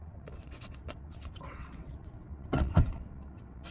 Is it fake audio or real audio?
fake